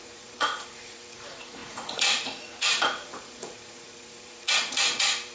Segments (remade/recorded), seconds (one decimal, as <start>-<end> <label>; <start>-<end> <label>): 0.0-5.3 remade